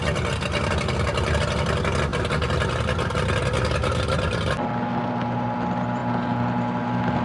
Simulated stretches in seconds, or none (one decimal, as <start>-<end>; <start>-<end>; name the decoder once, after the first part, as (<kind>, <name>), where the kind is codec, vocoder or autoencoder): none